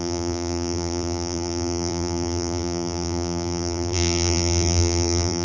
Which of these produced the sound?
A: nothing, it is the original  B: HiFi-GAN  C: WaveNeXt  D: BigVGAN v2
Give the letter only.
D